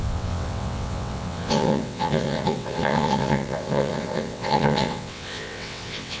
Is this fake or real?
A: fake